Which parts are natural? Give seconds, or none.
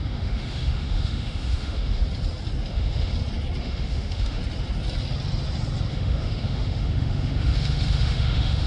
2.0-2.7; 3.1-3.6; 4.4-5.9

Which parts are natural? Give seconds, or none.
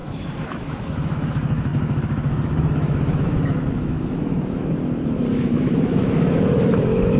none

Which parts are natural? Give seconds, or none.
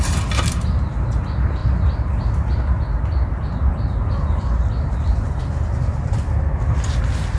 0.0-7.4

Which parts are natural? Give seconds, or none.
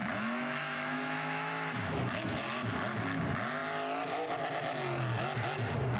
2.4-6.0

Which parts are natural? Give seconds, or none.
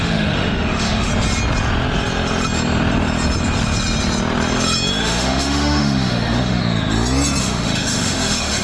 1.1-5.0; 6.6-7.4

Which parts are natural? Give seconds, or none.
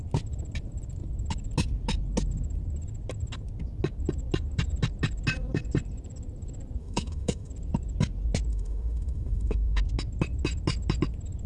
0.0-6.8; 7.5-8.5; 9.8-11.5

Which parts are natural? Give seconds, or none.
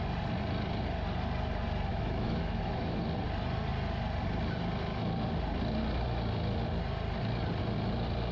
0.0-1.9; 3.0-8.3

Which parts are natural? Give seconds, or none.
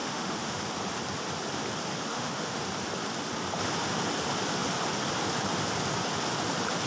0.6-2.1; 2.6-6.9